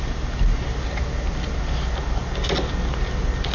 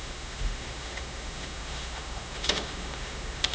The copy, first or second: second